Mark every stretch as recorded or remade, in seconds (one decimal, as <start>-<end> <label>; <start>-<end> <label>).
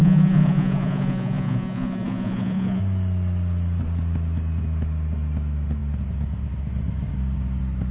0.0-2.8 remade; 2.8-7.9 recorded